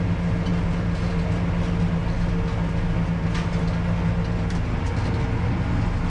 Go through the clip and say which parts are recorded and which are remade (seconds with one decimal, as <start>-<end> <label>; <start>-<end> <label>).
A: 0.0-6.1 recorded